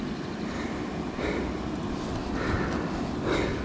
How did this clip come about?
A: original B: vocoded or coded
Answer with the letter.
A